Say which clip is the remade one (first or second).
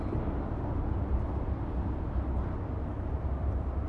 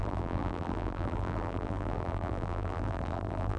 second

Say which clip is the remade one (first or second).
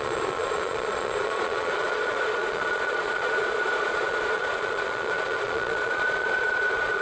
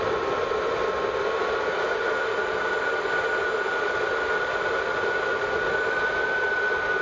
first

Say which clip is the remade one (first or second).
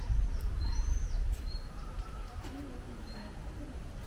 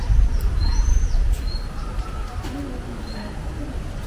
first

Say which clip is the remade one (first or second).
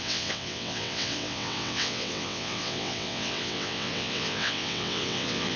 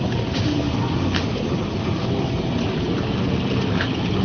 first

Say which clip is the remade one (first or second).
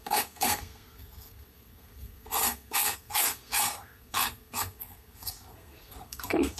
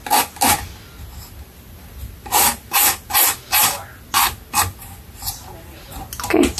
first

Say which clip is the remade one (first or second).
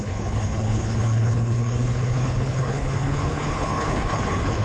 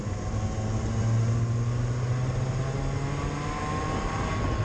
first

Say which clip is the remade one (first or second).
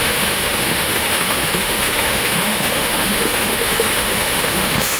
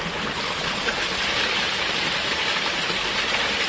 first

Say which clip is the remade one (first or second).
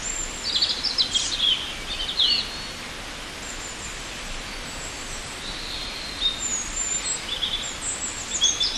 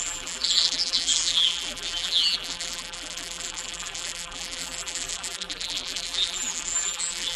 second